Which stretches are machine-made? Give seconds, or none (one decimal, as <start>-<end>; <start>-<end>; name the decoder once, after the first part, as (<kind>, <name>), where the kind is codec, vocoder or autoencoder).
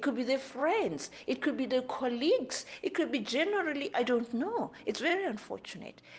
none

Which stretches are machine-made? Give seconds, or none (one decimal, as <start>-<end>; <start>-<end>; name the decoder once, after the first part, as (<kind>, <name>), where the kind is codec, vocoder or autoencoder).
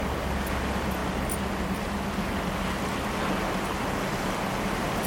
none